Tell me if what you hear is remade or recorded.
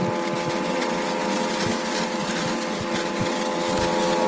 recorded